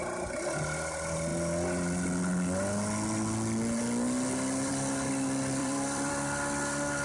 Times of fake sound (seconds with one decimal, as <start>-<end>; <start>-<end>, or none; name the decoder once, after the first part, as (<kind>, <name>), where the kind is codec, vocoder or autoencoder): 5.6-6.1 (vocoder, BigVGAN v2)